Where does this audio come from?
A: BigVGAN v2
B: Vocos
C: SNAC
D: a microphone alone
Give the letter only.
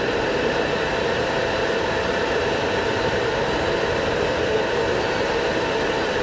A